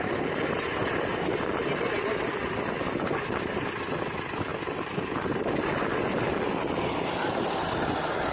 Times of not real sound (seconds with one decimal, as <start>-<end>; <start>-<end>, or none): none

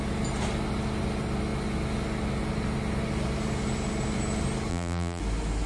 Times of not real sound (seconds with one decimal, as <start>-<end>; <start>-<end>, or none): 4.7-5.2